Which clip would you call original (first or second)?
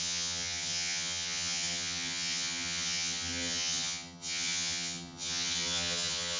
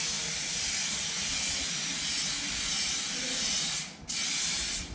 second